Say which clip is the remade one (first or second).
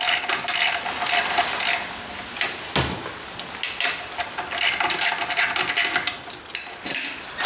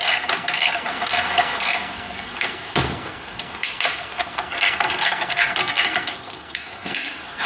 second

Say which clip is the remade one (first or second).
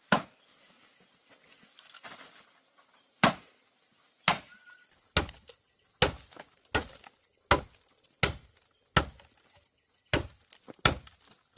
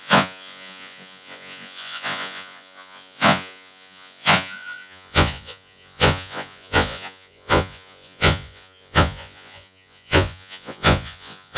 second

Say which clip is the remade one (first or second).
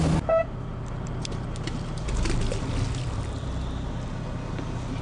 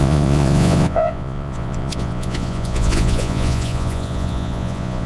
second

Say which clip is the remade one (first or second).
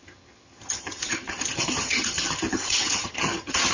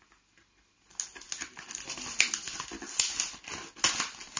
first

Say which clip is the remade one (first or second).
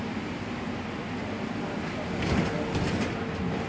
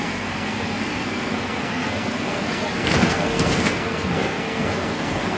second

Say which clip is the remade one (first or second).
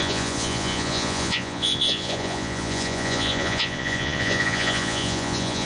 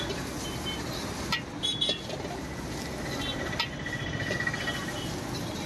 first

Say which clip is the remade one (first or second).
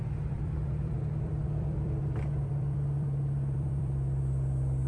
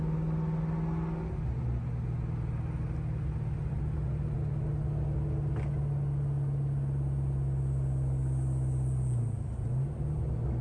first